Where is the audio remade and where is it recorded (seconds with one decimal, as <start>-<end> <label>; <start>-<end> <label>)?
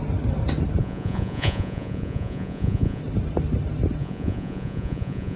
0.0-0.8 recorded; 0.8-3.0 remade; 3.0-4.0 recorded; 4.0-5.4 remade